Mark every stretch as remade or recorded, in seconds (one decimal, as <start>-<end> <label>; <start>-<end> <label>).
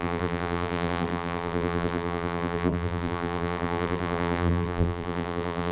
0.0-5.7 remade